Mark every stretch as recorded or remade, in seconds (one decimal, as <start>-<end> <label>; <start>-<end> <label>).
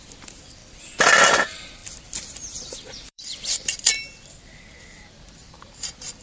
0.0-0.6 recorded; 0.6-1.4 remade; 1.4-1.8 recorded; 1.8-5.5 remade; 5.5-6.2 recorded